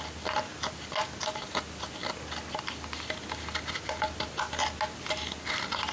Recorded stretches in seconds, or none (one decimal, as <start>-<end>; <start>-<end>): 0.0-5.9